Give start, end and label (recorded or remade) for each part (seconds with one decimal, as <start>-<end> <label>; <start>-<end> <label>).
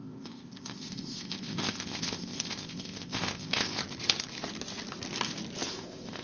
0.0-3.8 remade; 3.8-5.7 recorded; 5.7-6.2 remade